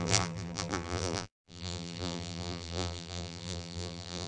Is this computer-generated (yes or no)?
yes